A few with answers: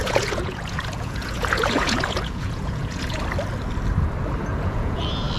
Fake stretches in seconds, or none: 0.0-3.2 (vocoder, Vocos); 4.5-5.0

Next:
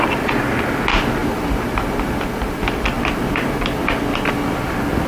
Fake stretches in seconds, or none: 1.2-1.9 (vocoder, BigVGAN v2)

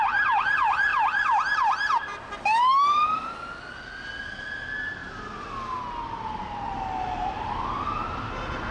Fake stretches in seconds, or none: 0.9-3.3 (vocoder, BigVGAN v2)

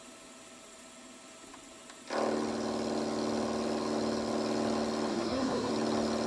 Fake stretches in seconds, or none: 5.1-5.7 (codec, SNAC)

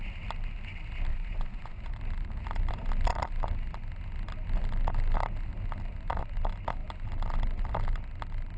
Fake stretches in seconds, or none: 1.1-1.9 (vocoder, Vocos)

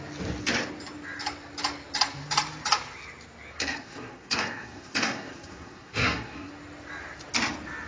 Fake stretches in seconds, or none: 3.5-6.5 (codec, SNAC)